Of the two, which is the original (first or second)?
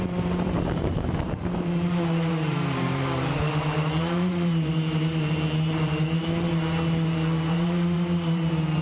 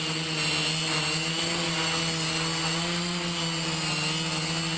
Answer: second